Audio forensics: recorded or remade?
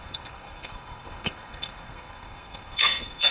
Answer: remade